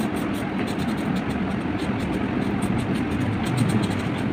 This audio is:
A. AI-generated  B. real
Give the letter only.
B